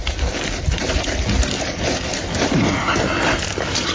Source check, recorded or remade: recorded